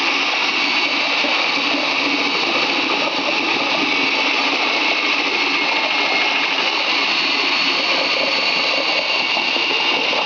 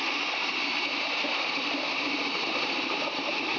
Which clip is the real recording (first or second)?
first